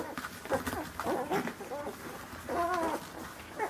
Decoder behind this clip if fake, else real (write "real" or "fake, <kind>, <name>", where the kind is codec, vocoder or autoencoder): real